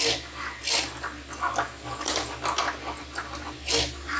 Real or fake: real